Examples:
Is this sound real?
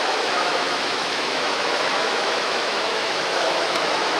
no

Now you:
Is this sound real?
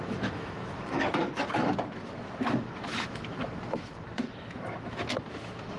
no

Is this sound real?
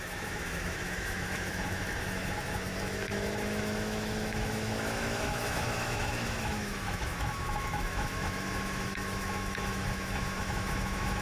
no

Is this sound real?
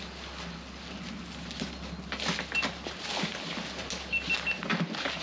yes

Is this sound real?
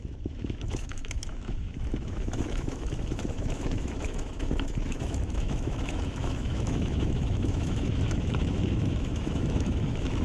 no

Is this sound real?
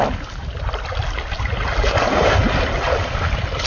yes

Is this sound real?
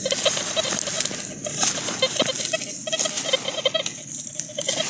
yes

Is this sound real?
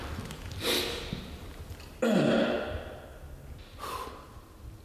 yes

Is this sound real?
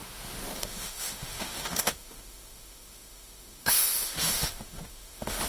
no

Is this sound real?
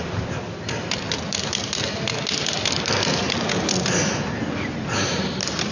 yes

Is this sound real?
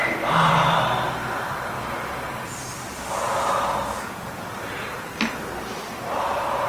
yes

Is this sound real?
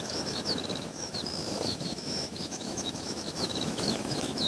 no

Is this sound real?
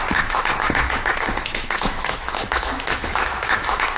no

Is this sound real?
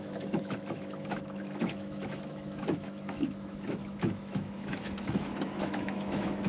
no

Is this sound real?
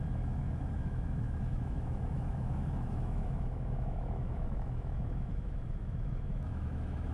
no